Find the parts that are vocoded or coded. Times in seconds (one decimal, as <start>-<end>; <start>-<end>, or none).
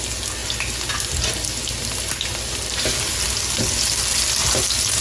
none